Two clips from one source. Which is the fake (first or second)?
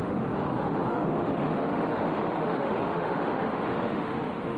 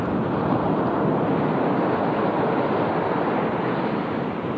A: first